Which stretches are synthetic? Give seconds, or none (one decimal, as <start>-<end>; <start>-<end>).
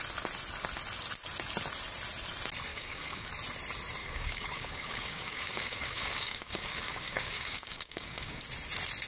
2.7-3.3; 4.0-8.4